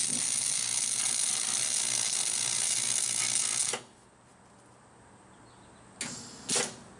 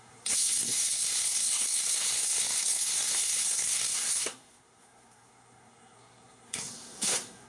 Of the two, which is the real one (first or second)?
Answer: first